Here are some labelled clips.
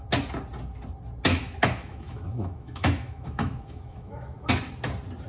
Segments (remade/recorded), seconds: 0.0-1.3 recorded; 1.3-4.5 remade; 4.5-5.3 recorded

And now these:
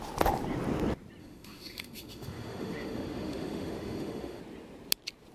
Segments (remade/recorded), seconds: 0.0-1.2 recorded; 1.2-4.4 remade; 4.4-5.3 recorded